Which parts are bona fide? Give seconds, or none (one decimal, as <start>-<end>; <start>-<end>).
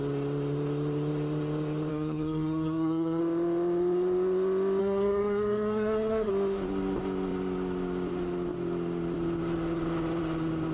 0.0-1.9; 3.2-4.8; 6.3-10.7